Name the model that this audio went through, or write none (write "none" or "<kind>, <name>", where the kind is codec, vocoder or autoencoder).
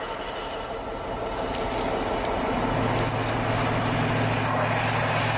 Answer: none